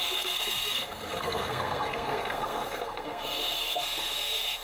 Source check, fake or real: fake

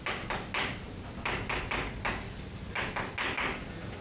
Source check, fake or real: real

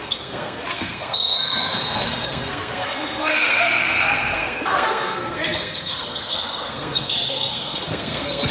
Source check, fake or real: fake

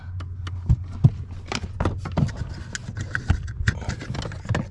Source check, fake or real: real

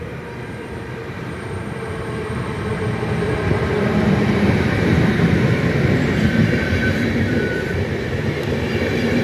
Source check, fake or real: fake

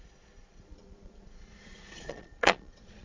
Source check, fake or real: fake